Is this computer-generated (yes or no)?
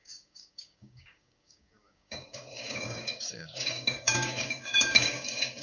yes